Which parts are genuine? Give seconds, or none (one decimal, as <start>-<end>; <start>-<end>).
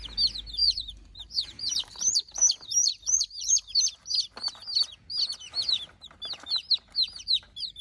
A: 0.0-0.6; 3.8-7.8